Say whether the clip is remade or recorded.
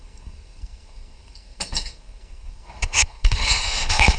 remade